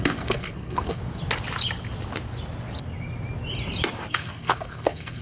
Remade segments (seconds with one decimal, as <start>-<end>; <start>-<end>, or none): 0.0-1.0; 4.1-5.2